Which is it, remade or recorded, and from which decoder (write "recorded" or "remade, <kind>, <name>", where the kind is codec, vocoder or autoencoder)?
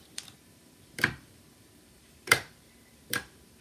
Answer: remade, vocoder, BigVGAN v2